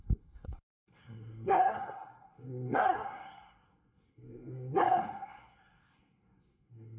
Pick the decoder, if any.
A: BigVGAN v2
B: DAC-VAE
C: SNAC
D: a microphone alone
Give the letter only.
C